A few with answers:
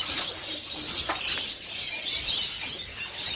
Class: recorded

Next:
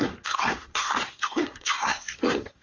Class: remade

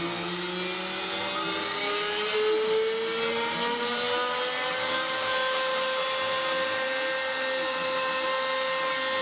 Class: recorded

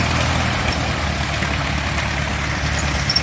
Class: recorded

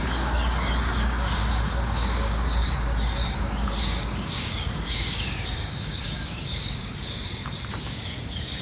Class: remade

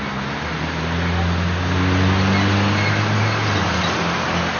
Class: recorded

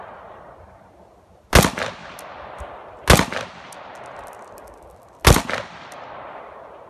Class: recorded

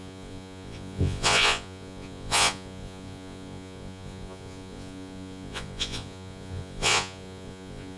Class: remade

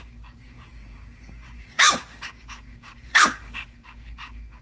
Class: remade